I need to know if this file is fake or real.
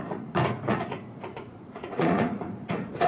fake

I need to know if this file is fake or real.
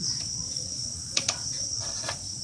fake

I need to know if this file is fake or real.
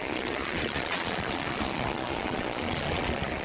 fake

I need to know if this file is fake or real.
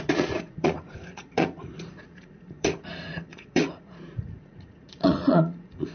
fake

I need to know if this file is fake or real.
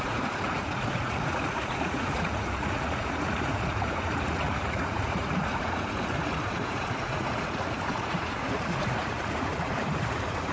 fake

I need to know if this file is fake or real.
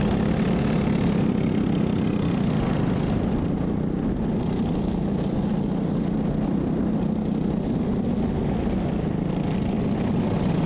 real